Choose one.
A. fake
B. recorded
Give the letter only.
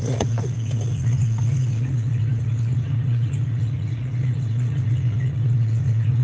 A